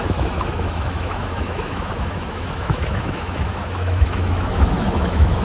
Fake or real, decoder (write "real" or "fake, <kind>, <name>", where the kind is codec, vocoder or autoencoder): fake, autoencoder, DAC-VAE